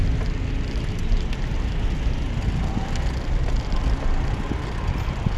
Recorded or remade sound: recorded